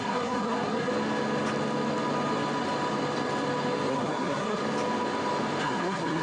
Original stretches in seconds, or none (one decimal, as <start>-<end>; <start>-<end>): 0.9-3.9; 4.6-5.6